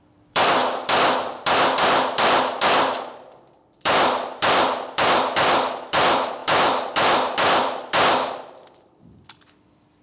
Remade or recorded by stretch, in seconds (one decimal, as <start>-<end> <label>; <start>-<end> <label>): 0.0-10.0 remade